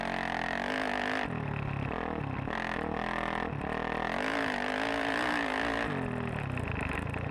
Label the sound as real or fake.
real